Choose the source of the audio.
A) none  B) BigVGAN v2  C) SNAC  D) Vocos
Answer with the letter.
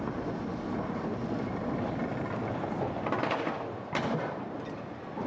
A